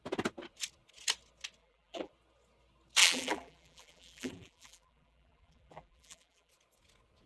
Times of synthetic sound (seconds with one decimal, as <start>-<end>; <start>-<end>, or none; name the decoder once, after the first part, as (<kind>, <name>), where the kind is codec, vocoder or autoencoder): 1.6-2.1 (vocoder, BigVGAN v2); 3.0-6.5